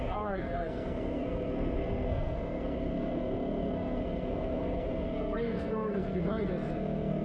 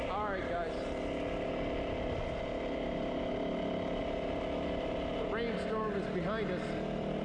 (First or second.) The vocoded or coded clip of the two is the first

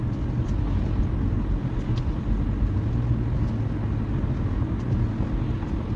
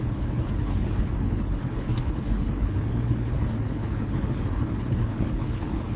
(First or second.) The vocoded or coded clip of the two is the second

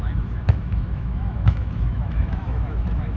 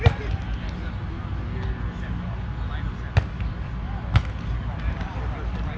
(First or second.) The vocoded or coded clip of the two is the first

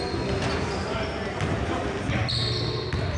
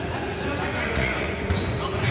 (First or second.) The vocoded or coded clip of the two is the second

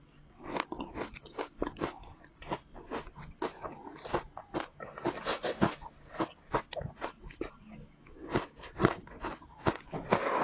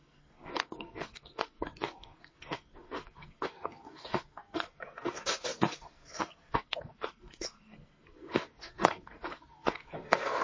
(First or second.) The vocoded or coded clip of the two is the second